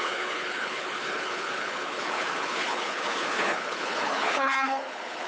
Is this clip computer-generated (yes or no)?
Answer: yes